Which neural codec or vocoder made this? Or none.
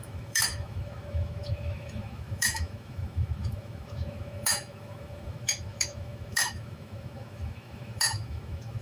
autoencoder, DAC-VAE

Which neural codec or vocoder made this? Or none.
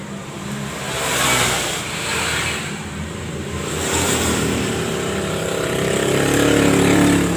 vocoder, BigVGAN v2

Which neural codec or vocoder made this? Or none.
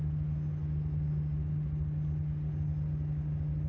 none